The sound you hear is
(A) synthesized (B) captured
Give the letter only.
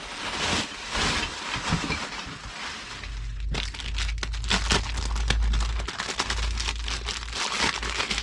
B